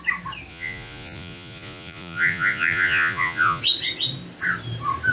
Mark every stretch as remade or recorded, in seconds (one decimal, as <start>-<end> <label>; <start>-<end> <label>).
0.0-0.5 recorded; 0.5-3.6 remade; 3.6-5.1 recorded